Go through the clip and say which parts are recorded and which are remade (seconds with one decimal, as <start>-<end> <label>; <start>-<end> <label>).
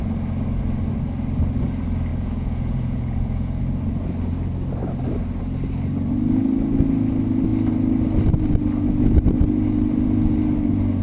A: 0.0-2.1 recorded; 2.1-3.6 remade; 3.6-11.0 recorded